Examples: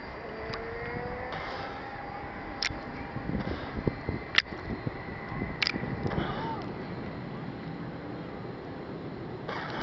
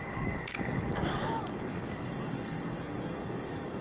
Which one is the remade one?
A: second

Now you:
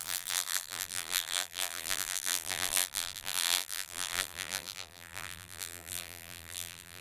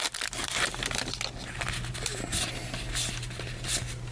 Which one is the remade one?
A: first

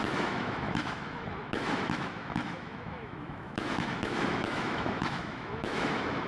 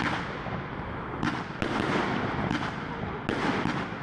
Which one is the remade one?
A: first